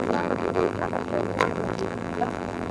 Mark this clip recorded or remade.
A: remade